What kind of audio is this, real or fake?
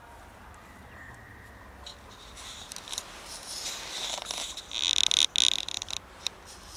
real